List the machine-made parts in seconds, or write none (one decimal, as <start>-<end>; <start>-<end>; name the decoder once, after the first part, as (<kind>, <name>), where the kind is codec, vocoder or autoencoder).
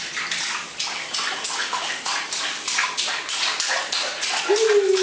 1.6-2.1 (autoencoder, DAC-VAE)